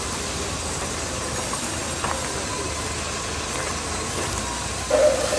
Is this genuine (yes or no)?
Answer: yes